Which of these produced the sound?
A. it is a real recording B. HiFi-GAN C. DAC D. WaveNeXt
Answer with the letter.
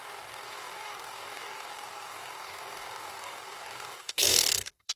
C